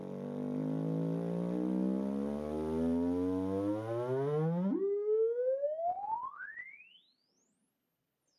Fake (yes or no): no